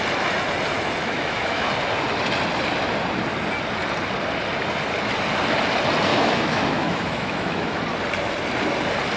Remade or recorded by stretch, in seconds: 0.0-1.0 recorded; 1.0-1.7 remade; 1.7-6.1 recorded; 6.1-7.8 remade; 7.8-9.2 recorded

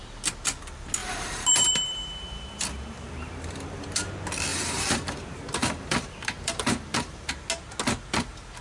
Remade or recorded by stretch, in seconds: 0.0-1.0 recorded; 1.0-3.9 remade; 3.9-4.5 recorded; 4.5-7.3 remade; 7.3-8.6 recorded

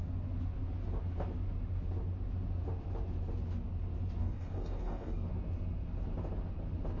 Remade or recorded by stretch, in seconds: 0.0-4.2 recorded; 4.2-5.3 remade; 5.3-7.0 recorded